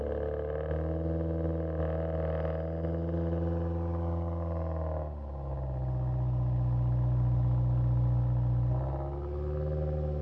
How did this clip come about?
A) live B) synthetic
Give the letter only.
A